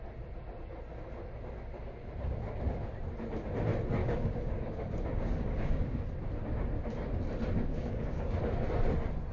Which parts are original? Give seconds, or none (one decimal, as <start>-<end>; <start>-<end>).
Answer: 0.0-4.0; 6.1-7.7; 8.4-9.3